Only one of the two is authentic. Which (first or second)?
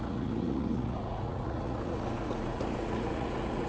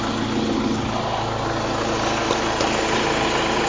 second